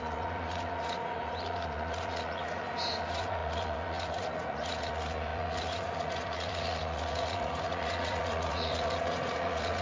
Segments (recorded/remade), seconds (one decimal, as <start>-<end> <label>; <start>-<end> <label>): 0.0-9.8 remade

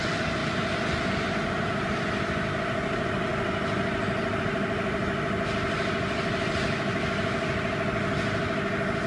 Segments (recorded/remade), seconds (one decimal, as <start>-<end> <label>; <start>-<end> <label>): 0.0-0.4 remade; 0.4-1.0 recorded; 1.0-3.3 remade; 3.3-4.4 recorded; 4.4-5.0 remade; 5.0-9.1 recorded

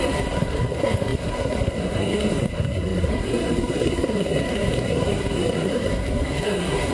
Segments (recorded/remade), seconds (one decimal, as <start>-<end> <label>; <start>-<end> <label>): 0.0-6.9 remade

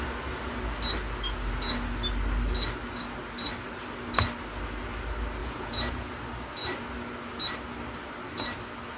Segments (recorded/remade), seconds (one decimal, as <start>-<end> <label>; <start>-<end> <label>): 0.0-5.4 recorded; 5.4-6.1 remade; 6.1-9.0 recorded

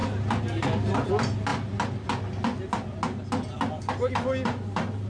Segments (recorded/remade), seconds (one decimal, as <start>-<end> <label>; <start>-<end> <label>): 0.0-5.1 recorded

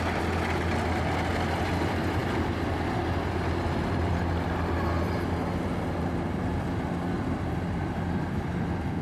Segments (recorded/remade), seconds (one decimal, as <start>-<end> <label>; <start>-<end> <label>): 0.0-9.0 recorded

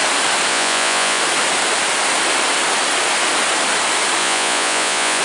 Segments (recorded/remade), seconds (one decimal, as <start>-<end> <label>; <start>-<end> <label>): 0.0-0.5 recorded; 0.5-1.2 remade; 1.2-4.2 recorded; 4.2-5.2 remade